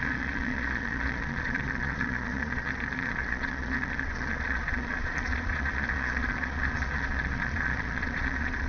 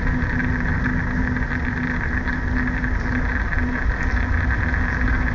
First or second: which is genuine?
second